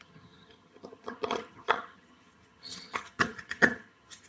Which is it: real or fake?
fake